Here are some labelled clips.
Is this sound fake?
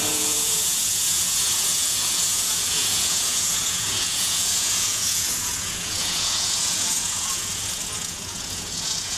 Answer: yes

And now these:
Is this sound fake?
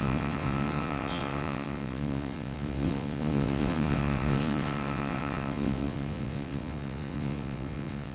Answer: yes